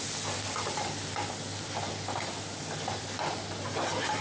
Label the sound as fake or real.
real